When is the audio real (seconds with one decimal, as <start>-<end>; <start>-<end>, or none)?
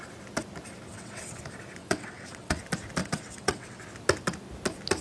0.0-0.9; 1.4-1.8; 2.6-3.0; 3.8-5.0